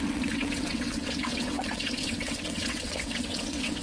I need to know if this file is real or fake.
fake